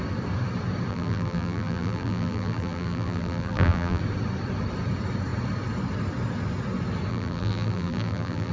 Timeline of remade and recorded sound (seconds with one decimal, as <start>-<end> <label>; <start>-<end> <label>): 0.0-0.9 recorded; 0.9-4.0 remade; 4.0-7.1 recorded; 7.1-8.5 remade